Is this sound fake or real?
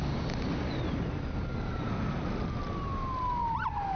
real